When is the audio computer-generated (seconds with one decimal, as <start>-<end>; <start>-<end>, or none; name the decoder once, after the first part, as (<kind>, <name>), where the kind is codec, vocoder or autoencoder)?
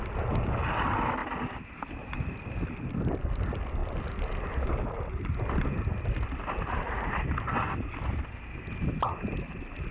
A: none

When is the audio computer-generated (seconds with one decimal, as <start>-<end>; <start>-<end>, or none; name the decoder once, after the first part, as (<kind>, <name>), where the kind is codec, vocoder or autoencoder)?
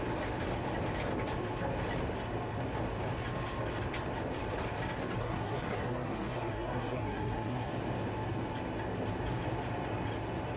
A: 5.2-7.7 (codec, SNAC)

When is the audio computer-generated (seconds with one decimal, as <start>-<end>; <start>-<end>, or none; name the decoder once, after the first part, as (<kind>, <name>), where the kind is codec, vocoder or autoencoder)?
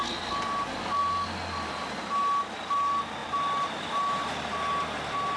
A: none